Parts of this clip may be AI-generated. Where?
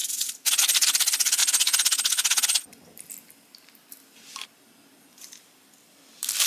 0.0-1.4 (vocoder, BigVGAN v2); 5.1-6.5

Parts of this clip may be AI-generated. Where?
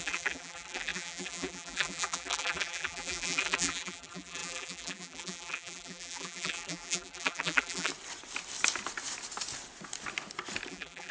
0.0-7.9 (vocoder, BigVGAN v2); 10.7-11.1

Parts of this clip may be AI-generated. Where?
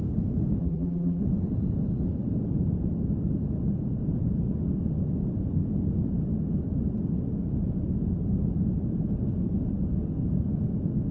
0.6-1.2 (vocoder, BigVGAN v2)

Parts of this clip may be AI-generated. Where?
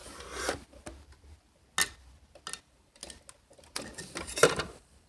2.6-3.0 (vocoder, BigVGAN v2); 4.3-5.1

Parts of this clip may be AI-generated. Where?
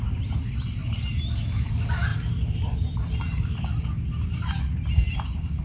0.0-0.8 (vocoder, BigVGAN v2); 2.1-3.8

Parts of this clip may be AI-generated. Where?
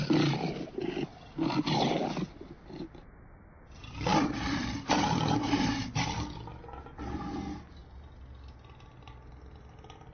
4.1-6.0 (vocoder, BigVGAN v2)